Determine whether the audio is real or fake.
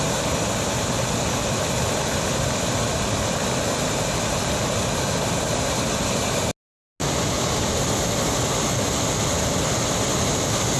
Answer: real